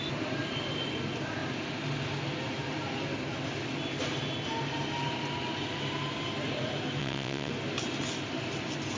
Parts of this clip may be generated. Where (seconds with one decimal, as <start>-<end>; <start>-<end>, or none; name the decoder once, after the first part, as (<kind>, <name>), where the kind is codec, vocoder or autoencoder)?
7.0-7.5 (vocoder, WaveNeXt)